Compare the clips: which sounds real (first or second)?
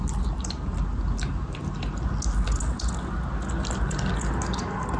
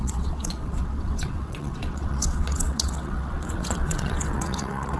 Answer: first